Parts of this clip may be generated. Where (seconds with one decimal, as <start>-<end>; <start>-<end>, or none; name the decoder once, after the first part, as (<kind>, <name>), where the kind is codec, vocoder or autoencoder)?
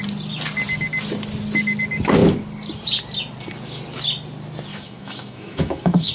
4.7-6.1 (autoencoder, DAC-VAE)